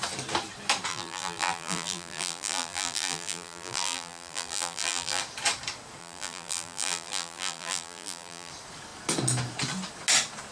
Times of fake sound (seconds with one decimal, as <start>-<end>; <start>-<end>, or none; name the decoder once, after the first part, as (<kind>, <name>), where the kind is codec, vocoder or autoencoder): 0.9-5.2 (vocoder, BigVGAN v2); 6.0-8.5